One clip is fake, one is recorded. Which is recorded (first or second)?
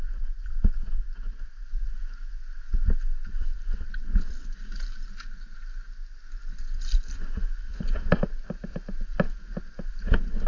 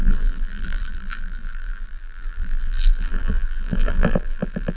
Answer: first